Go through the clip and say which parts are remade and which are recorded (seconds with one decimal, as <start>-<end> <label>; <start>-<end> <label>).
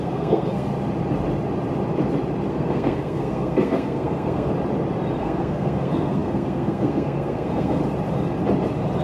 0.0-0.7 remade; 0.7-2.5 recorded; 2.5-4.5 remade; 4.5-5.2 recorded; 5.2-7.8 remade; 7.8-9.0 recorded